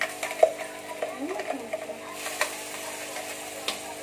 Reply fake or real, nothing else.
real